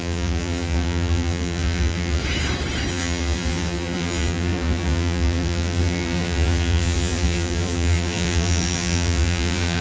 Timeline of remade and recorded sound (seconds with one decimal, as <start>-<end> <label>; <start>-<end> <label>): 0.0-2.2 remade; 2.2-2.9 recorded; 2.9-9.8 remade